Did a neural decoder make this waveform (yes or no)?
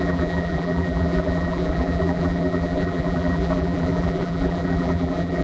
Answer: yes